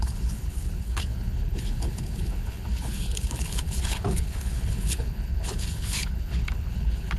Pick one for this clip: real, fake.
fake